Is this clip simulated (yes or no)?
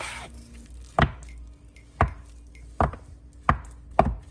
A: no